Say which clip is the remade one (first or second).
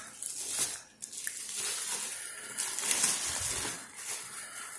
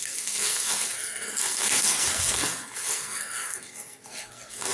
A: second